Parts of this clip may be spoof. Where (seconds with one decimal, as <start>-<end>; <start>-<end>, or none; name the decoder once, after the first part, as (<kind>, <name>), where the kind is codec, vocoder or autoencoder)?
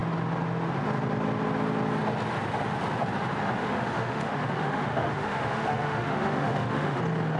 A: 3.6-7.0 (autoencoder, DAC-VAE)